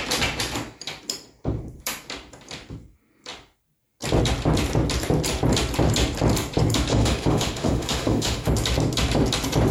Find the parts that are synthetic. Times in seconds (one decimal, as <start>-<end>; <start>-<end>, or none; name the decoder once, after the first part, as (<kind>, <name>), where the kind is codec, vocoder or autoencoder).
6.9-8.5 (autoencoder, DAC-VAE)

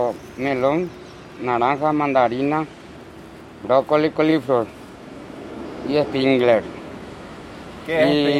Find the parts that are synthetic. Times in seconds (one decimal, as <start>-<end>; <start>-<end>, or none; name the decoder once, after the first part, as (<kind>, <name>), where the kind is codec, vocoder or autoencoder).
4.3-8.4 (autoencoder, DAC-VAE)

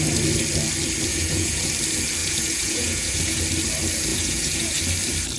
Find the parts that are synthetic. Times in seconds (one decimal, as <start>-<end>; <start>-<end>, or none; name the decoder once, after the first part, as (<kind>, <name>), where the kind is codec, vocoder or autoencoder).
1.1-1.7 (vocoder, Vocos); 2.2-3.4; 4.1-4.8